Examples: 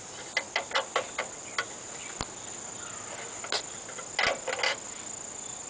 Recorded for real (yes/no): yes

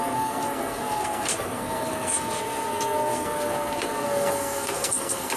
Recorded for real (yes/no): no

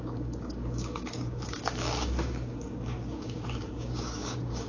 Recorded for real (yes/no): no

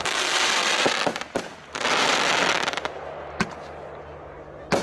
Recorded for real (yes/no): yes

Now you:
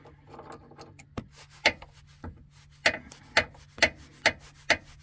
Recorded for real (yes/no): yes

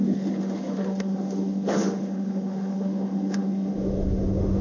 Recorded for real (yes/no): no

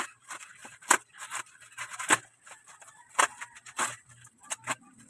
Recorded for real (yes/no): yes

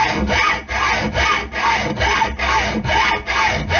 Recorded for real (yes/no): yes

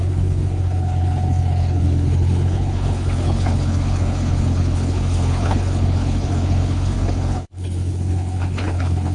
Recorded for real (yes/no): no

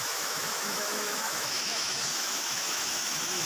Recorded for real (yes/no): no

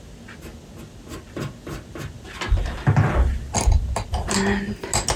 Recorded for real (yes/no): yes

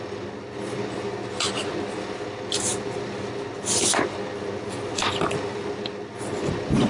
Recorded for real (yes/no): yes